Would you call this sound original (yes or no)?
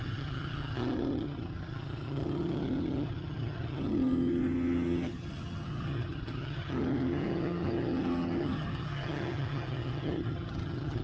no